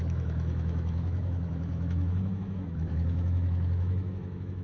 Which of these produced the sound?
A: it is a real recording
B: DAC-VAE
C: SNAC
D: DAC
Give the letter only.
B